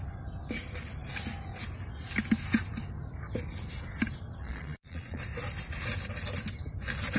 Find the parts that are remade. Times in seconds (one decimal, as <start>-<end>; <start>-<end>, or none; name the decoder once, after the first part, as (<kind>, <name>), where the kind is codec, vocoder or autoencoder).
4.4-5.2 (vocoder, Vocos)